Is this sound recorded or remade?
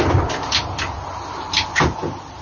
recorded